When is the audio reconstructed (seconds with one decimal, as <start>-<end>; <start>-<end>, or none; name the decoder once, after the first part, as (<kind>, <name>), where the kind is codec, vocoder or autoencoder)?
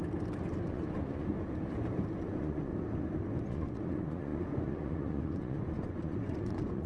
0.6-1.3 (vocoder, Vocos); 2.2-2.7; 3.5-6.9